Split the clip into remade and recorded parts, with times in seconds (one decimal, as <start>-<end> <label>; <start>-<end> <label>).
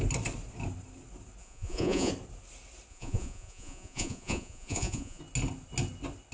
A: 0.0-1.4 recorded; 1.4-2.1 remade; 2.1-2.9 recorded; 2.9-5.2 remade; 5.2-6.3 recorded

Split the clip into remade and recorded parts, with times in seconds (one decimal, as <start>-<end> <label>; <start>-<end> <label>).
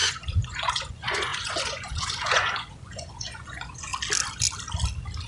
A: 0.0-3.9 remade; 3.9-5.3 recorded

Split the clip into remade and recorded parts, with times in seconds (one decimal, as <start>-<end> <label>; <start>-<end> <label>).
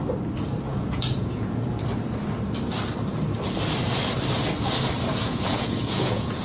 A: 0.0-0.7 recorded; 0.7-1.6 remade; 1.6-5.2 recorded; 5.2-6.4 remade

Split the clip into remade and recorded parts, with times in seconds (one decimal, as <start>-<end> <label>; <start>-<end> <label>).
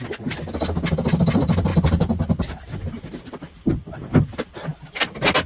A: 0.0-5.5 recorded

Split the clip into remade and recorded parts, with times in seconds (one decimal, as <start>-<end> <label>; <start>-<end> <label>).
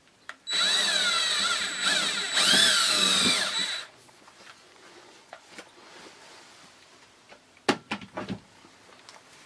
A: 0.0-3.6 recorded; 3.6-6.0 remade; 6.0-9.5 recorded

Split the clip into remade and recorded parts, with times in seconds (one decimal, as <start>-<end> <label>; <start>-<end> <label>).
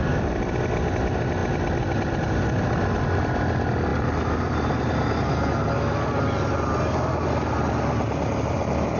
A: 0.0-9.0 recorded